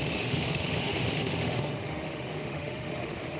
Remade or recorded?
remade